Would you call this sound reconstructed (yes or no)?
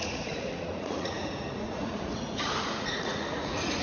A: yes